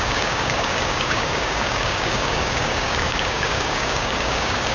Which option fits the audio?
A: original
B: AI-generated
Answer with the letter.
B